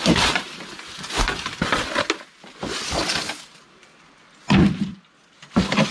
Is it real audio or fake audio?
real